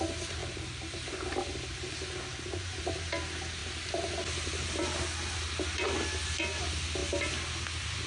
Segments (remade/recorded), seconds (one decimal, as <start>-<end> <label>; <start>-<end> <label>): 0.0-0.4 recorded; 0.4-1.1 remade; 1.1-8.1 recorded

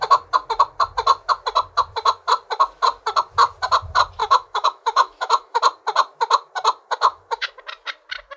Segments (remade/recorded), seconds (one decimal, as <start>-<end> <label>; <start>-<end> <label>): 0.0-4.2 recorded; 4.2-5.6 remade; 5.6-7.1 recorded; 7.1-7.6 remade; 7.6-8.4 recorded